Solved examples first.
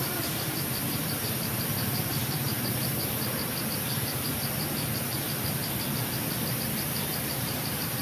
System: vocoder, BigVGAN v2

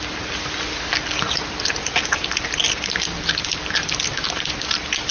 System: none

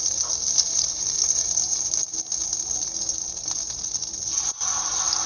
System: none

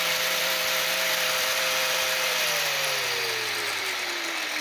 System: vocoder, BigVGAN v2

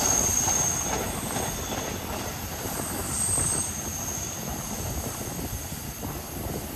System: vocoder, BigVGAN v2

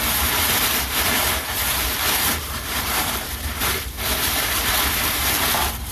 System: vocoder, BigVGAN v2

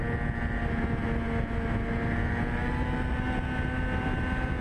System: none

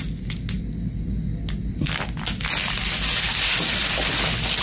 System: none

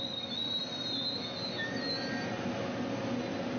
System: none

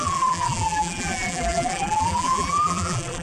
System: vocoder, BigVGAN v2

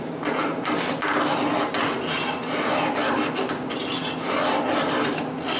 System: none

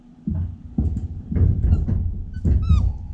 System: vocoder, BigVGAN v2